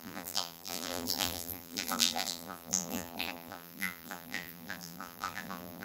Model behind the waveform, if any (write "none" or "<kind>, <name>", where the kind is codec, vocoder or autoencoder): vocoder, BigVGAN v2